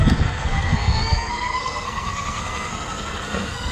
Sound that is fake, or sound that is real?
fake